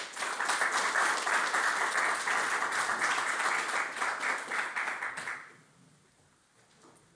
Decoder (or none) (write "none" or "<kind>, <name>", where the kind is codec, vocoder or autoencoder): none